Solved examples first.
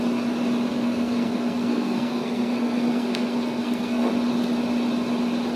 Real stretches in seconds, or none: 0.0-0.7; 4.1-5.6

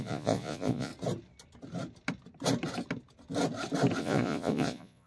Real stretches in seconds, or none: 0.9-4.0

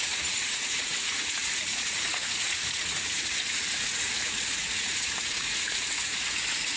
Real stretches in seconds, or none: none

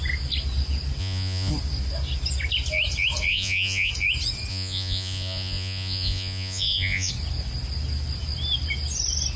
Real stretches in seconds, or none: 0.0-1.0; 1.5-3.3; 3.9-4.5; 7.1-9.4

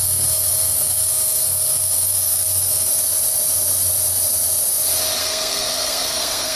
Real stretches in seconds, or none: 2.9-5.2